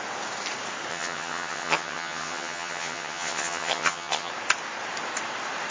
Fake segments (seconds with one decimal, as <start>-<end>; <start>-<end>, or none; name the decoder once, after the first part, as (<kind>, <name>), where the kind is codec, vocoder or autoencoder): 0.9-4.3 (vocoder, HiFi-GAN)

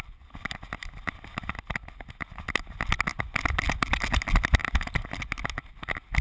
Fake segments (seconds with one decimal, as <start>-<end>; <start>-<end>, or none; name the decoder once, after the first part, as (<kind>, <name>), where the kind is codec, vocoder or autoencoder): none

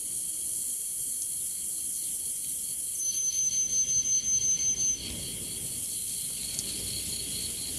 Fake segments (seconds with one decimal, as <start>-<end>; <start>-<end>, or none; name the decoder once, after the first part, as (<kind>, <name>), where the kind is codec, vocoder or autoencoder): none

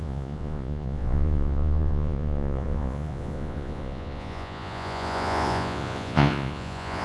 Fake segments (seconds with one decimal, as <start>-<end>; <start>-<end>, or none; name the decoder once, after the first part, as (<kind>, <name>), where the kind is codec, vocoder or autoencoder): 0.0-7.0 (vocoder, Vocos)

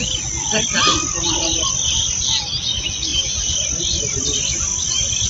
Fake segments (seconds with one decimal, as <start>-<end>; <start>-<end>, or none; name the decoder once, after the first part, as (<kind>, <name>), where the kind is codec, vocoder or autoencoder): none

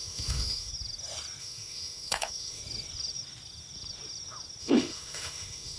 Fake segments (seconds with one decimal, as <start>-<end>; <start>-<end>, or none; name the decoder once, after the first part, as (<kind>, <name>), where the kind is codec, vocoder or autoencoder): 0.0-0.7 (autoencoder, DAC-VAE); 1.4-2.6; 4.6-5.8

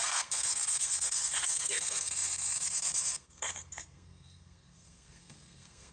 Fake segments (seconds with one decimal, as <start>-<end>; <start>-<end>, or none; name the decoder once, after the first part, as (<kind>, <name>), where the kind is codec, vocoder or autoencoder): 0.0-5.9 (codec, SNAC)